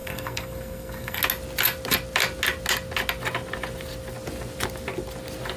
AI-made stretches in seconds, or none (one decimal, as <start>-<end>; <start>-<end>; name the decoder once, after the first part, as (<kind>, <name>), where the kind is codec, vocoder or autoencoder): 0.0-1.2 (codec, SNAC)